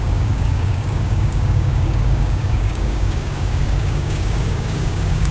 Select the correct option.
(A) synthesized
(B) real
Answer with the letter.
A